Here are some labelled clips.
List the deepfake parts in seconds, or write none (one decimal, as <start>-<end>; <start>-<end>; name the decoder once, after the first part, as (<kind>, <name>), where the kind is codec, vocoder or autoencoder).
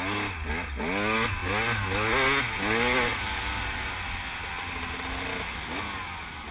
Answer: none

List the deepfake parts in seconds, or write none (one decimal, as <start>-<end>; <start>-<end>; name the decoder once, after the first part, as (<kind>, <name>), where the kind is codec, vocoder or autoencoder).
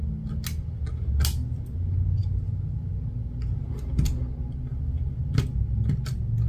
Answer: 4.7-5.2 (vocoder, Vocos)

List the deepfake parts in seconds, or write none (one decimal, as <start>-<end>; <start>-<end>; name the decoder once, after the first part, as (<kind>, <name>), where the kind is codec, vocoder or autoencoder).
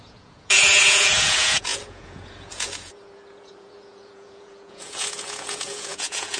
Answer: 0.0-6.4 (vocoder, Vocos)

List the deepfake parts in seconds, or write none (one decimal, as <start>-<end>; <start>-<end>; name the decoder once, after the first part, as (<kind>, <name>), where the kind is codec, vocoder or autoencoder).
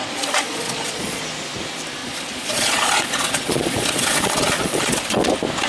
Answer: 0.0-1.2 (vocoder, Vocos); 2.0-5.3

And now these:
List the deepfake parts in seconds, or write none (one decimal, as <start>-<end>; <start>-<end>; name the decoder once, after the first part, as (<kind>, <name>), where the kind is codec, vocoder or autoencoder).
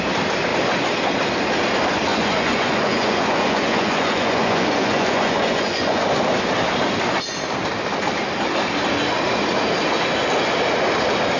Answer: 2.1-6.0 (vocoder, Vocos)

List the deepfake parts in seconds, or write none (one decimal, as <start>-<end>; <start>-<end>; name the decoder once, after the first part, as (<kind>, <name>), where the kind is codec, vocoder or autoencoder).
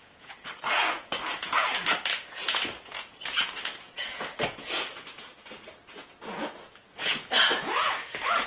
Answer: 0.0-1.8 (vocoder, Vocos); 2.4-5.3; 5.8-8.5